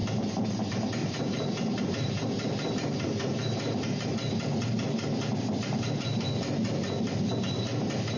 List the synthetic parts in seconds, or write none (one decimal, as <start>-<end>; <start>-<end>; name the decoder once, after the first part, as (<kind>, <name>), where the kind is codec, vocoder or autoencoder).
0.0-0.5 (vocoder, BigVGAN v2); 1.0-4.3